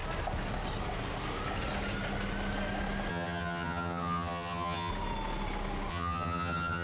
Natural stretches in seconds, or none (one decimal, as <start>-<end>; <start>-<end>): 0.0-3.1; 4.9-5.9